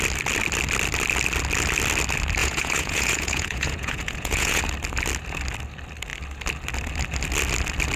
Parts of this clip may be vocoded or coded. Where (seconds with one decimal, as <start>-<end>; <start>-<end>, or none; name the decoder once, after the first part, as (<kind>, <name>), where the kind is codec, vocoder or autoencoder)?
2.4-4.6 (vocoder, Vocos)